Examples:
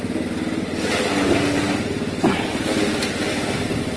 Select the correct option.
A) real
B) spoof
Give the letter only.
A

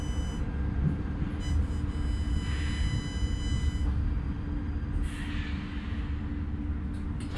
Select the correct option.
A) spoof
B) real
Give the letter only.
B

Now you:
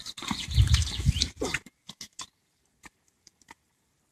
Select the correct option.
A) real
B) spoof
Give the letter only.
B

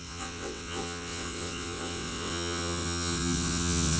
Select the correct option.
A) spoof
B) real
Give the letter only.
A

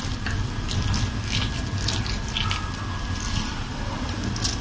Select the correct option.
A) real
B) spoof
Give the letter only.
A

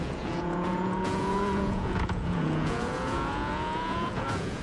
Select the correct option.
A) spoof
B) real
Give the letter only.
A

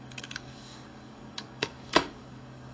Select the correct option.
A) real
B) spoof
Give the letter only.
B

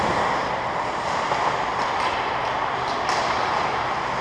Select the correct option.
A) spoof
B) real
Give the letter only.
B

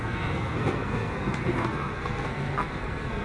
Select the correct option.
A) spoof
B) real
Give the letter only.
A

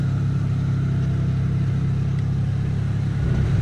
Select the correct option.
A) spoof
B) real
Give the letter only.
B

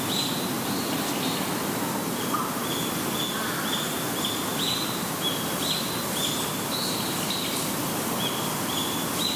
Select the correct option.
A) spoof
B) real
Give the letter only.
B